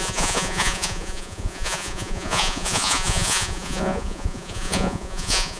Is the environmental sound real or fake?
fake